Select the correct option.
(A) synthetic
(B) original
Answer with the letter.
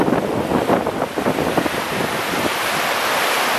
B